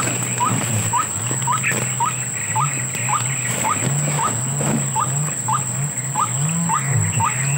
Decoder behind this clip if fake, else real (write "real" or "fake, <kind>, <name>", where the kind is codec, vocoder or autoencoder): real